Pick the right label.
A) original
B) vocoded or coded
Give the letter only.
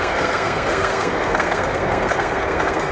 B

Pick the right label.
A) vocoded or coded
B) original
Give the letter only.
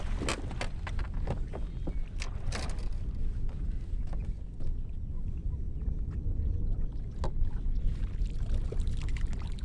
B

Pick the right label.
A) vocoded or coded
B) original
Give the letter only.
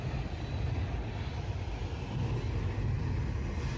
B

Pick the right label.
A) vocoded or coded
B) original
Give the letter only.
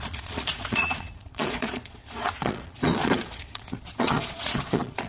A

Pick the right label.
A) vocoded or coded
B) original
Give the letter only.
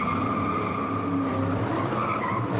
A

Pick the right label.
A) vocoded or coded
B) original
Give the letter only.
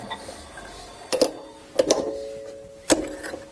B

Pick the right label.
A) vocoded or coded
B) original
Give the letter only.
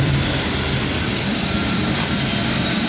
A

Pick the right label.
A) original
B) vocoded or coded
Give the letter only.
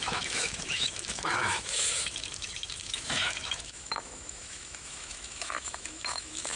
B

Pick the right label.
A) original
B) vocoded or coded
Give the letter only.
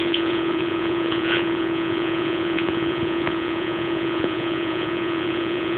B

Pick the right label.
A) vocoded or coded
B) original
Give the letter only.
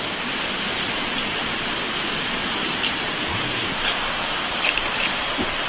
B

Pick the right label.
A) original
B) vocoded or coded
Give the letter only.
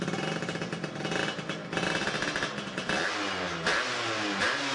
A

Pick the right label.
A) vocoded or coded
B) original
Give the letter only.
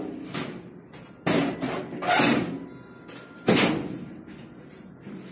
B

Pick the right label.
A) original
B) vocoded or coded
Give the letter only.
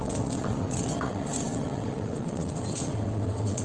B